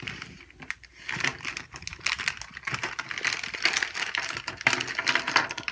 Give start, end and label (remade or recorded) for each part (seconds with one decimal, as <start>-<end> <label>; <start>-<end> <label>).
0.0-5.7 recorded